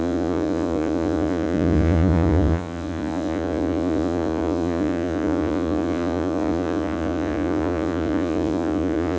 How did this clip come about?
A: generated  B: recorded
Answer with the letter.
A